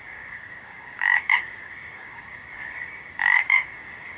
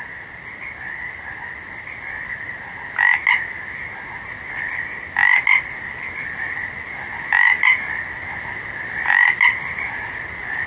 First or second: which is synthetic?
first